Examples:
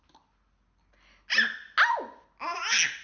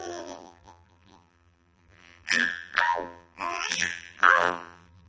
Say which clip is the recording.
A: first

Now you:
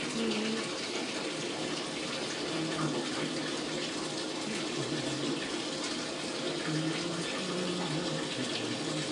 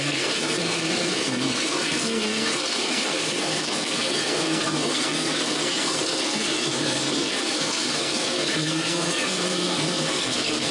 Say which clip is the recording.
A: first